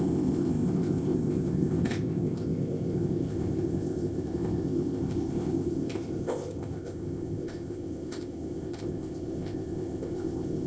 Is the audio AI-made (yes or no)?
yes